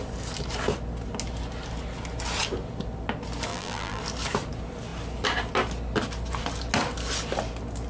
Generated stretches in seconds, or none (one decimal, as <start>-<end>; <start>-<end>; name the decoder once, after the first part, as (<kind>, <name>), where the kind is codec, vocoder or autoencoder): 3.5-4.0 (vocoder, BigVGAN v2)